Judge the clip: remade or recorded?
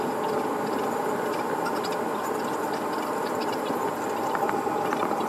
remade